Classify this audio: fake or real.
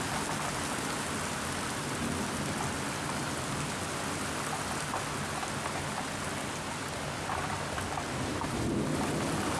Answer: real